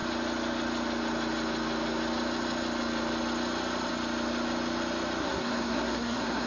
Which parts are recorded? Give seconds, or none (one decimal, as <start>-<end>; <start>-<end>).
0.0-5.2